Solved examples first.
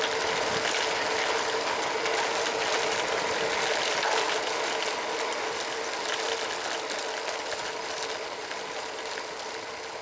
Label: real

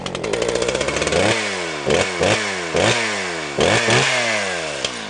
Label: real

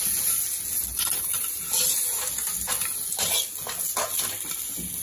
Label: real